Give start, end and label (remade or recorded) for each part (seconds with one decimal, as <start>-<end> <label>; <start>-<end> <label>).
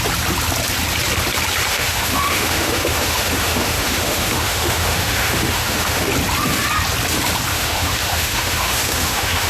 0.0-1.7 recorded; 1.7-6.1 remade; 6.1-7.5 recorded; 7.5-9.5 remade